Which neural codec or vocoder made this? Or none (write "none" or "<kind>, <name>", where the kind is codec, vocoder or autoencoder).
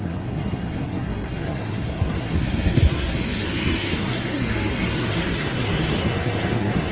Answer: codec, SNAC